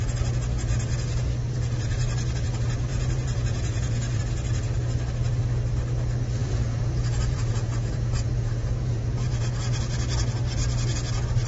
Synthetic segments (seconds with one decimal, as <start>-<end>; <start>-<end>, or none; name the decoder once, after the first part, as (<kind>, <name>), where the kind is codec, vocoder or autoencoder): 2.9-4.2 (vocoder, Vocos); 6.4-9.8